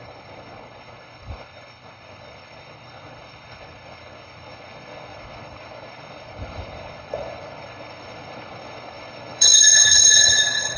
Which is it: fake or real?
fake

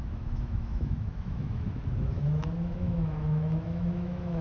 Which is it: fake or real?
fake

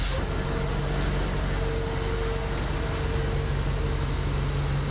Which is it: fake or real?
real